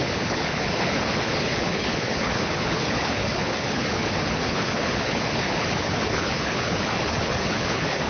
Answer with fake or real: fake